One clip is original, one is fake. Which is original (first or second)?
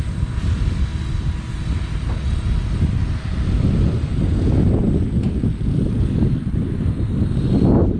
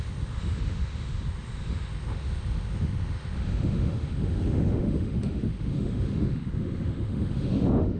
first